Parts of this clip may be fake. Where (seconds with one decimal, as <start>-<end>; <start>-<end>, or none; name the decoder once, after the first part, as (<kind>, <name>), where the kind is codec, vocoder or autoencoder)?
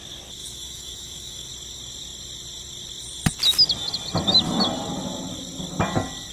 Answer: 0.4-1.5 (autoencoder, DAC-VAE)